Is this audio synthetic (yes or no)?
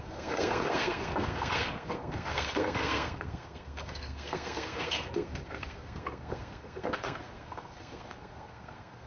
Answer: yes